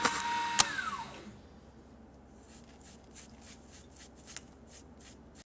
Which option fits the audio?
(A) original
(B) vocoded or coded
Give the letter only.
A